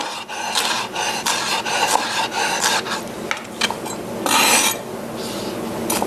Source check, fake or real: real